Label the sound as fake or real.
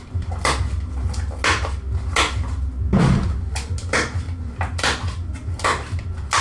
real